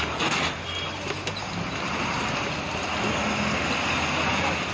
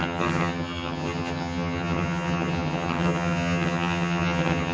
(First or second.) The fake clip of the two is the second